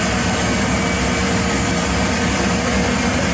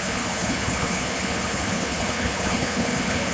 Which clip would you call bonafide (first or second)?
first